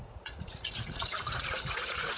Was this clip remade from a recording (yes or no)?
yes